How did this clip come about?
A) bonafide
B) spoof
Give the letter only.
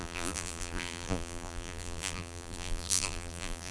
B